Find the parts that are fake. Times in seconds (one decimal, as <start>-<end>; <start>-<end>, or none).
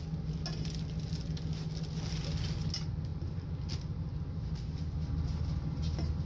none